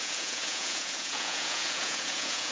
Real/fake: fake